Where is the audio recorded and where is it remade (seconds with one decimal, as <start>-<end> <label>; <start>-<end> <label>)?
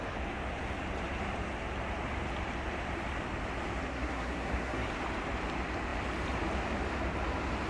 0.0-3.9 recorded; 3.9-4.9 remade; 4.9-7.7 recorded